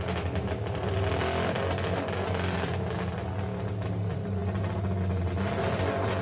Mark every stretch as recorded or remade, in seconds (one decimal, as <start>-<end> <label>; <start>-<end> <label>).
0.0-6.2 recorded